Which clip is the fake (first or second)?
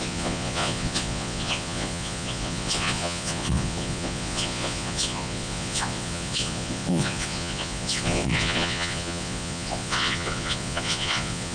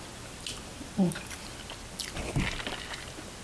first